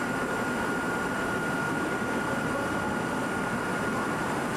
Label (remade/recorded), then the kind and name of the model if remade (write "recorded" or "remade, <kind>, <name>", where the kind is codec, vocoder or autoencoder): remade, vocoder, BigVGAN v2